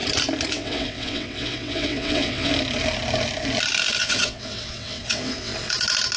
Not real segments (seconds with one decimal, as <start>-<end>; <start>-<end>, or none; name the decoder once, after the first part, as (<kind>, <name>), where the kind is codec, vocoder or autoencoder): 0.5-2.5 (vocoder, WaveNeXt); 4.0-5.5

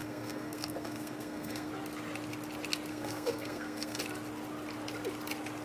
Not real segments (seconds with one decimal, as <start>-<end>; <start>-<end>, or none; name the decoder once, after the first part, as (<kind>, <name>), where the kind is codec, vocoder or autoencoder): 0.0-1.7 (codec, SNAC); 2.9-4.0

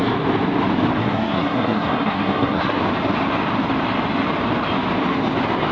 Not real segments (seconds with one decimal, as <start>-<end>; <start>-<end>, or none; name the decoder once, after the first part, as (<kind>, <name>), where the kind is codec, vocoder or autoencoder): 1.0-2.8 (codec, SNAC)